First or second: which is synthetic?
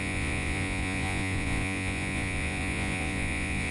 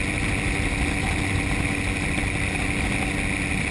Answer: first